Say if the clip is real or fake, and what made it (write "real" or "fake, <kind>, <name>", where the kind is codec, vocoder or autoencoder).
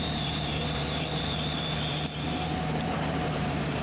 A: fake, vocoder, BigVGAN v2